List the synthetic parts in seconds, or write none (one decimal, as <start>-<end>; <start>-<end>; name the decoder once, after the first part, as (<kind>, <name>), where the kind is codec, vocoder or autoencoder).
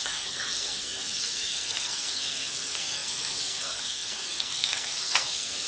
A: 0.0-5.7 (codec, SNAC)